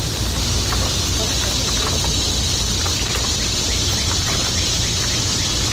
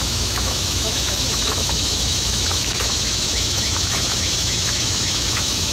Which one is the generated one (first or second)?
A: second